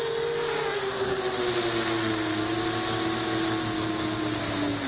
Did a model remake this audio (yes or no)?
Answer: no